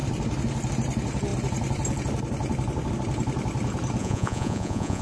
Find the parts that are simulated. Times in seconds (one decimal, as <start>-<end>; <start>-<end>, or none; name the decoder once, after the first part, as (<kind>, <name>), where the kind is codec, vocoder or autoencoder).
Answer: 4.0-5.0 (vocoder, Vocos)